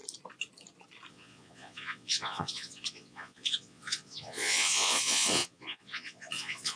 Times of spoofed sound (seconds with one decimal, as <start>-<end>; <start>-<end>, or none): 1.1-6.8